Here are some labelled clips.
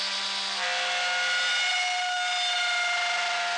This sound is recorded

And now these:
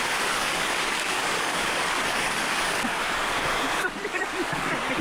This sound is remade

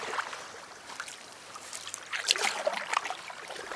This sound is remade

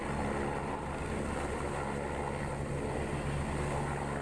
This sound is recorded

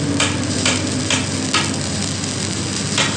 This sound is recorded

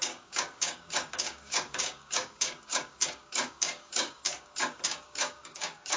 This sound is remade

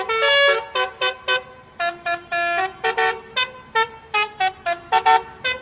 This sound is recorded